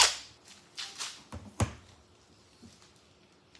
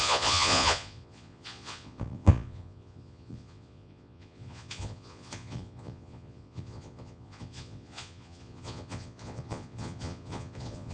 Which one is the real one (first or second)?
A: first